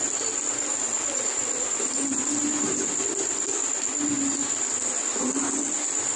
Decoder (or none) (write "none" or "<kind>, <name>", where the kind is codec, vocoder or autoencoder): none